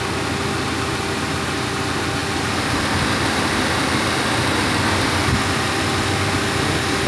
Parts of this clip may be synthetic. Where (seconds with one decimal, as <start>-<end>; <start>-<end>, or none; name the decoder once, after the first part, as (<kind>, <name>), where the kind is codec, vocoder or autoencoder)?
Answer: none